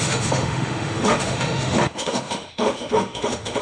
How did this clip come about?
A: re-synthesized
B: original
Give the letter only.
A